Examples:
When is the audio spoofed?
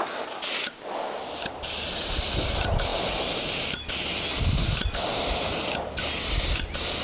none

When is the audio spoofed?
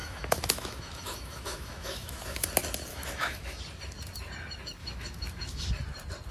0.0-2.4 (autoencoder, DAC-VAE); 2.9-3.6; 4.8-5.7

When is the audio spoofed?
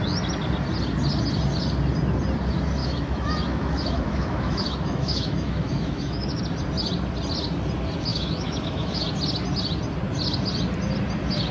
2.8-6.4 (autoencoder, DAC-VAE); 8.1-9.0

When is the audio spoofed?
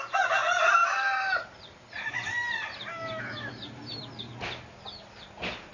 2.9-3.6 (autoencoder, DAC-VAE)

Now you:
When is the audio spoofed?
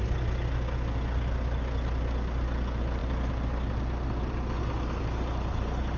none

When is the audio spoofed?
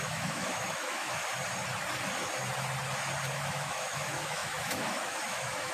0.0-1.2 (autoencoder, DAC-VAE); 3.3-5.7